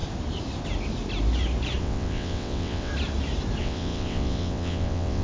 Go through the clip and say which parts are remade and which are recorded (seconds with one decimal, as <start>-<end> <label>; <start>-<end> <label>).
0.0-1.8 recorded; 1.8-2.9 remade; 2.9-3.6 recorded; 3.6-5.2 remade